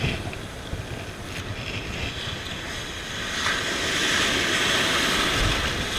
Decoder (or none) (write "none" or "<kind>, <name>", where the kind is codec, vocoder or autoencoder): none